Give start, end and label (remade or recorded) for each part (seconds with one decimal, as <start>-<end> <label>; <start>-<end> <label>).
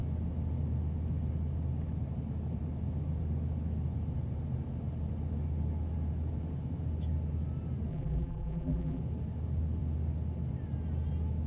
0.0-7.9 recorded; 7.9-9.0 remade; 9.0-11.5 recorded